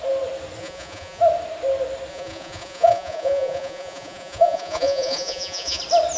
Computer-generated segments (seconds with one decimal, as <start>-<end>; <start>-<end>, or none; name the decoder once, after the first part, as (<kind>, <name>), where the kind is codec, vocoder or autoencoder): 0.6-1.2 (vocoder, Vocos); 2.1-5.8